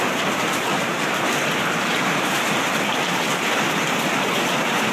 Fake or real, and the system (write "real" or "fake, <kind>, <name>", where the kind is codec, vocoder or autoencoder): real